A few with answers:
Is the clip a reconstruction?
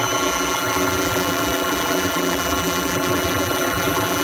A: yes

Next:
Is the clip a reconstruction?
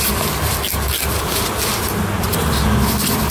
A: no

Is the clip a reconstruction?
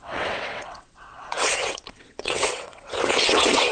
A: yes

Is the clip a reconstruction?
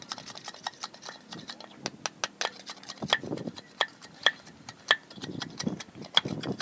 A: no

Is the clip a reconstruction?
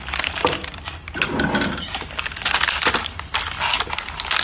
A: no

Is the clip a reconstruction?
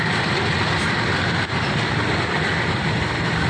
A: no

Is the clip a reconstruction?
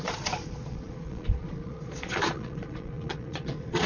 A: yes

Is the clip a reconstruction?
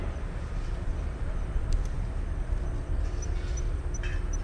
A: no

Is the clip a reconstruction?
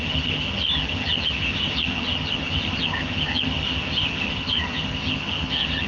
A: yes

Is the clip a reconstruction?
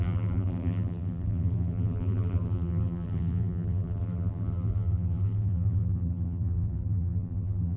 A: yes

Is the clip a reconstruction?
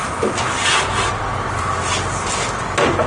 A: no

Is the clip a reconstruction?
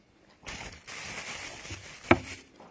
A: no